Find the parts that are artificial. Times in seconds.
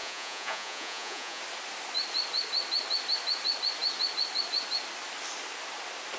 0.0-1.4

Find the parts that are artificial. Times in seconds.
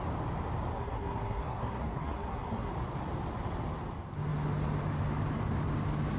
0.7-2.7